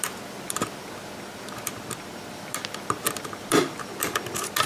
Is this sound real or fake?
real